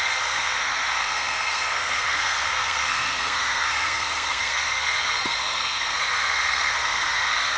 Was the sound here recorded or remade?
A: remade